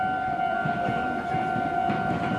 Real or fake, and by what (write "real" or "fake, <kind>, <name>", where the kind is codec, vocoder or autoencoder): real